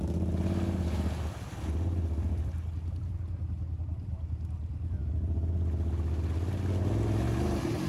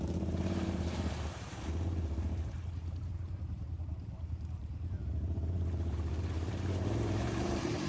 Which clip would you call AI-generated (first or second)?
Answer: second